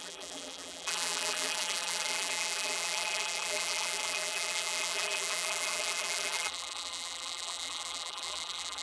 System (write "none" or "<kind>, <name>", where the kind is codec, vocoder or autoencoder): vocoder, BigVGAN v2